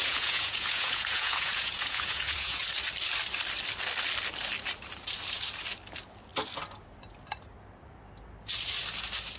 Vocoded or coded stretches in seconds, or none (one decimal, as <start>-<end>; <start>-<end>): 0.0-2.6